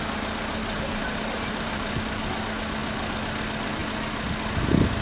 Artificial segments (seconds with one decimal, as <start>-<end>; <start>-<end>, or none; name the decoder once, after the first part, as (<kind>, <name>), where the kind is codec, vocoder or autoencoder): 0.6-2.2 (vocoder, BigVGAN v2)